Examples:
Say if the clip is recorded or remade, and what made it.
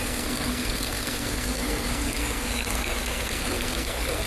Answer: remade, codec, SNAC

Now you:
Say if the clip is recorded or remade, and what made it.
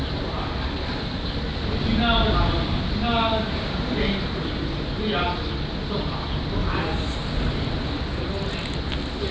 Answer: recorded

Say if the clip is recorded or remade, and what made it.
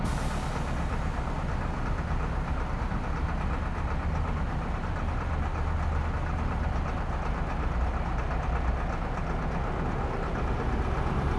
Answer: recorded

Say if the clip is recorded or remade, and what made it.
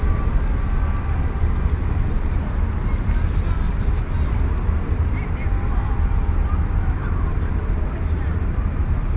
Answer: recorded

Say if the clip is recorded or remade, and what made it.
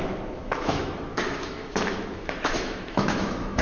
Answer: remade, autoencoder, DAC-VAE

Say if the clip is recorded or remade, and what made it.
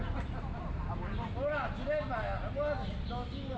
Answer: recorded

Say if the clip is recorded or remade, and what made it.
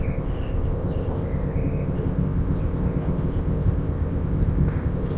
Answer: remade, codec, ZipCodec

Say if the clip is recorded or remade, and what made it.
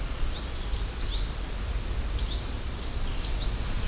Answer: recorded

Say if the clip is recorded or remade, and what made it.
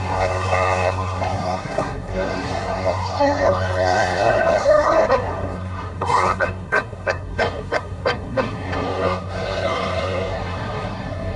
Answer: remade, codec, SNAC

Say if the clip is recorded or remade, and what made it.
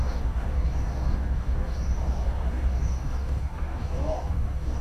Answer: remade, codec, DAC